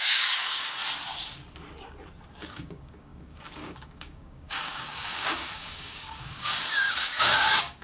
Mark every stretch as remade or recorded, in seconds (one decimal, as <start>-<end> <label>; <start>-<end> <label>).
0.0-0.8 remade; 0.8-2.3 recorded; 2.3-7.8 remade